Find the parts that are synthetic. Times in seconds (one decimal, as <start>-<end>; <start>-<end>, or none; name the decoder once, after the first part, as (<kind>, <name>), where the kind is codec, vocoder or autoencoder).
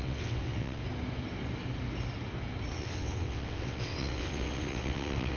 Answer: 0.0-0.8 (vocoder, WaveNeXt); 2.7-5.4